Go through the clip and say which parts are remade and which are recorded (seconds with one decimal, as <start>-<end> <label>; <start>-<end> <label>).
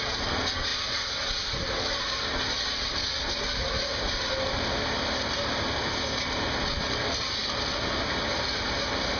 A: 0.0-9.2 recorded